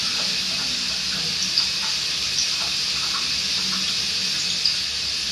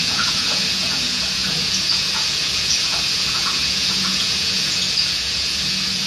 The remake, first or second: second